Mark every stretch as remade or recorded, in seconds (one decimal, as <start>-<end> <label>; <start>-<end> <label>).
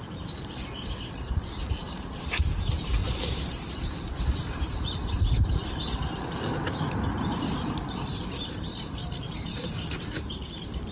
0.0-5.6 remade; 5.6-8.0 recorded; 8.0-10.9 remade